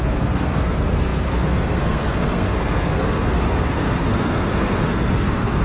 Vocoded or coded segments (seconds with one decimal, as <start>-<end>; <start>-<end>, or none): 0.0-5.6